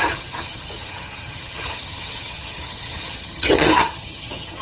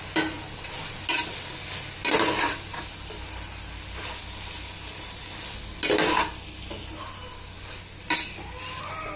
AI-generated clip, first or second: first